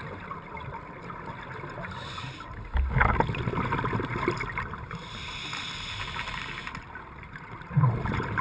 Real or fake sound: real